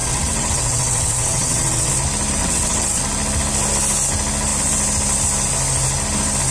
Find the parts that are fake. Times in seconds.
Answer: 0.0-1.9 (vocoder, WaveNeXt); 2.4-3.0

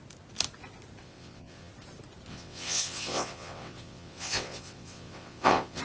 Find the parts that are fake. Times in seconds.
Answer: 1.0-1.7 (vocoder, WaveNeXt); 2.3-5.8

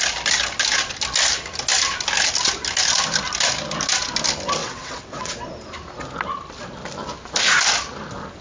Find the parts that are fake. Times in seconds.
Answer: 4.6-5.3 (vocoder, WaveNeXt)

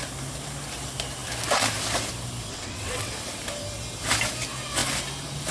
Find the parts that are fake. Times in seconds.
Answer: 2.5-3.1 (vocoder, WaveNeXt)

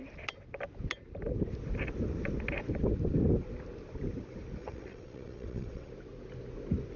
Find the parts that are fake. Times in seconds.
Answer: 4.6-5.9 (vocoder, WaveNeXt)